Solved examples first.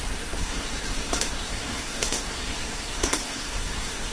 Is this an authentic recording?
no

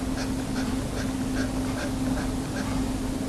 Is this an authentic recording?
yes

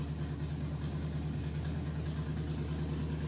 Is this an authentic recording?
yes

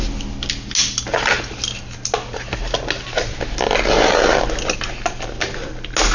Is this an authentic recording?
yes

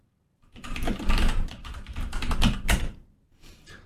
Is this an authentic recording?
no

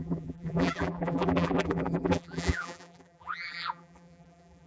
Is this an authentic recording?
no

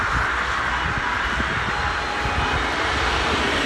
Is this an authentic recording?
yes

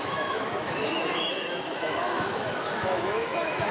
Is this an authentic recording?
no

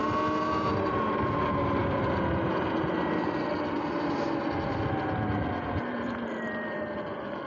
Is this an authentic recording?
yes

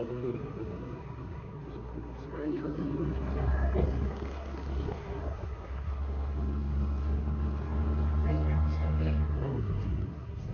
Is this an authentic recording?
no